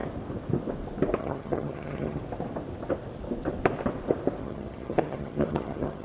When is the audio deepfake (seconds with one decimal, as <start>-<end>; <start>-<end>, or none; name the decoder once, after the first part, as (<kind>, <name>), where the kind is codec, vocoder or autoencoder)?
1.2-2.2 (vocoder, HiFi-GAN); 4.4-6.0